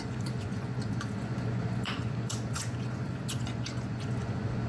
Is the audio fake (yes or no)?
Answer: yes